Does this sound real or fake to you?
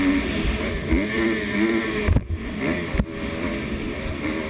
real